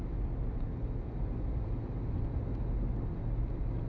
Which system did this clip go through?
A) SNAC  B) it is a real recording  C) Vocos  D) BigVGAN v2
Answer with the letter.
B